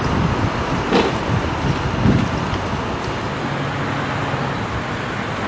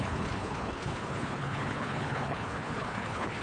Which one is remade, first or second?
second